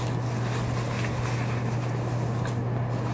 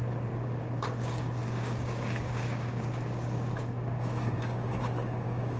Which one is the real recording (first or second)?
first